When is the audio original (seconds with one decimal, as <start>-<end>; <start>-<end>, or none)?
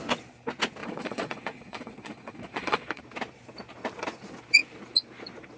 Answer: 0.0-0.8; 3.0-5.6